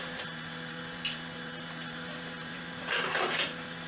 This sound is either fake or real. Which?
fake